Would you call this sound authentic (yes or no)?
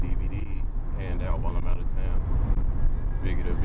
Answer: yes